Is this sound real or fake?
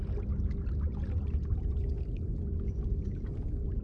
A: real